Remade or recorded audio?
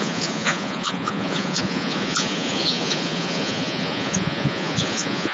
remade